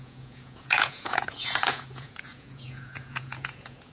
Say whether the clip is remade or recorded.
remade